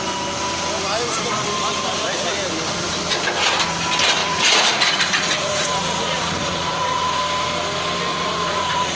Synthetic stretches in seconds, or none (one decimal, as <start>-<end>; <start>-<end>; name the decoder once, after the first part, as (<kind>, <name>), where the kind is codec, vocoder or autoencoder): 4.2-7.2 (vocoder, Vocos); 8.1-9.0